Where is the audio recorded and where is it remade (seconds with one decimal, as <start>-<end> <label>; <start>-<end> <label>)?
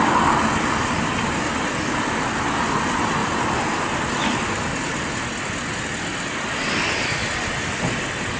0.0-8.4 recorded